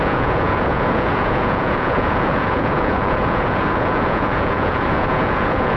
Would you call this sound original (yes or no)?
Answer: no